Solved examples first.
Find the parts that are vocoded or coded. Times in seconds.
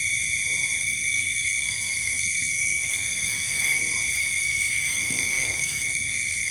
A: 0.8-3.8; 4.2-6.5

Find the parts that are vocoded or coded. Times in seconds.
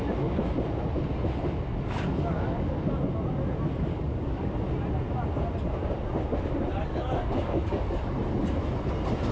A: 1.7-2.9; 3.9-4.5; 6.9-8.1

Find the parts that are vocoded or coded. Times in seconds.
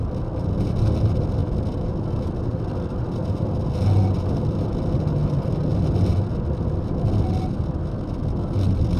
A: 1.4-2.0; 2.5-4.7; 5.2-6.1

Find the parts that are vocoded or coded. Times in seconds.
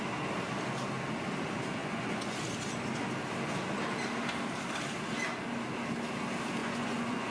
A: 1.8-2.4; 6.6-7.3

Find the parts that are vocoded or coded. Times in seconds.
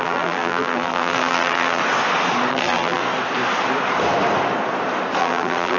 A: 0.0-1.8; 2.5-3.0; 5.2-5.8